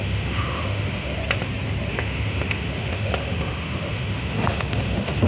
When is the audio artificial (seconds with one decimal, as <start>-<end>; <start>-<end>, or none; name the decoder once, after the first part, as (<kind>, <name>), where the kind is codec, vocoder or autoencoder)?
0.0-1.2 (autoencoder, DAC-VAE); 1.9-5.3